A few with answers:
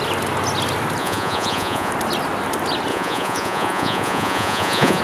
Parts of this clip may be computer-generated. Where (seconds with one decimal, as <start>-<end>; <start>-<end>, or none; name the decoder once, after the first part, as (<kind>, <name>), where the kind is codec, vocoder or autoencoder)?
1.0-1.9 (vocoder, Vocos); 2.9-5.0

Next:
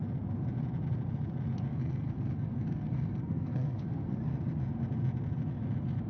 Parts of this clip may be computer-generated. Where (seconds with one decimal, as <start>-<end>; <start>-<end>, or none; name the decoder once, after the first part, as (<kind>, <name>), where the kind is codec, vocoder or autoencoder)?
1.7-4.2 (codec, SNAC)

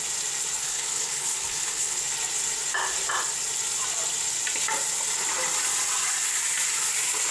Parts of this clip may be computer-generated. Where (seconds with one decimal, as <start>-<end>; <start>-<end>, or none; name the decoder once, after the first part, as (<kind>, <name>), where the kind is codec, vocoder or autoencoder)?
0.6-2.0 (codec, HILCodec)